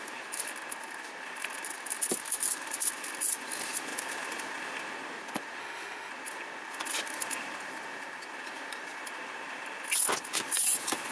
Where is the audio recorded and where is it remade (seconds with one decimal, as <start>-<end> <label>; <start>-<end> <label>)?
0.0-5.6 recorded; 5.6-6.1 remade; 6.1-11.1 recorded